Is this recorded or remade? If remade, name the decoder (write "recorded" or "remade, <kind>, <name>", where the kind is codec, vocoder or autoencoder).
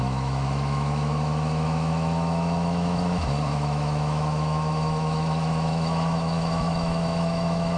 remade, autoencoder, DAC-VAE